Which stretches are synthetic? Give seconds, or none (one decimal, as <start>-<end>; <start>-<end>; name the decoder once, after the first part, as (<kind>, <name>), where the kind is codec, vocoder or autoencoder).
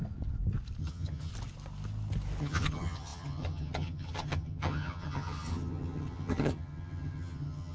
0.8-1.3 (vocoder, HiFi-GAN); 2.4-7.7